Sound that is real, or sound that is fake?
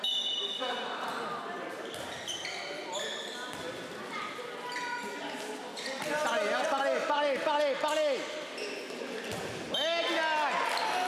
real